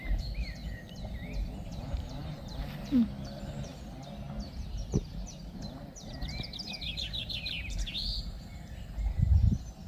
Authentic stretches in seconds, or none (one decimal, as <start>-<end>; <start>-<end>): 0.6-1.8; 3.7-5.1